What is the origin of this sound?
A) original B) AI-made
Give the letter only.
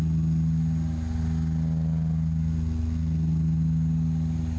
A